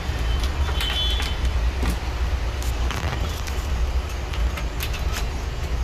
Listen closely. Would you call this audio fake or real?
real